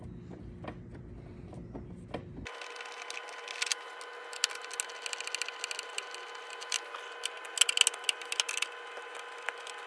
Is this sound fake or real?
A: real